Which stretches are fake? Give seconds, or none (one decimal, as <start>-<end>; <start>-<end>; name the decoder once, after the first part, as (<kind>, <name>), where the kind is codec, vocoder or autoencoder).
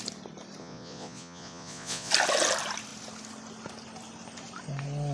0.6-2.1 (vocoder, Vocos)